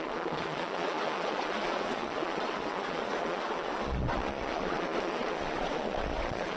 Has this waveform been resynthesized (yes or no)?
yes